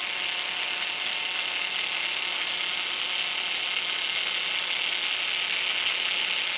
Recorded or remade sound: recorded